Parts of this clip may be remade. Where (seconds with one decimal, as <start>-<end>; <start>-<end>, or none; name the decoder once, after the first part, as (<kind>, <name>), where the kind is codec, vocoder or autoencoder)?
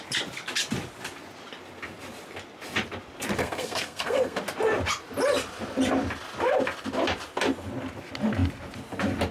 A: 3.4-4.4 (codec, SNAC)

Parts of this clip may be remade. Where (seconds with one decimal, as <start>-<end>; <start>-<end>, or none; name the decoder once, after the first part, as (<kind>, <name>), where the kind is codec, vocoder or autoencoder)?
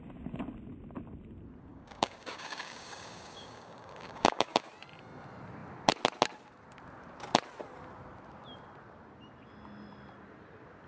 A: 1.7-4.7 (codec, DAC)